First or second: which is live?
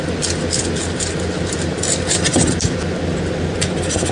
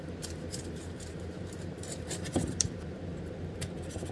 first